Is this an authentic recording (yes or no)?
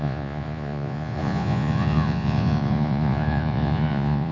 no